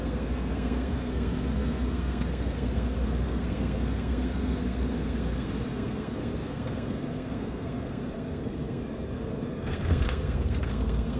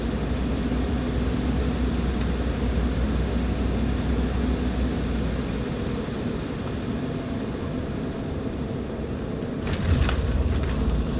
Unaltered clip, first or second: second